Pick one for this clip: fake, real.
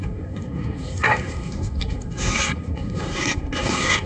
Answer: fake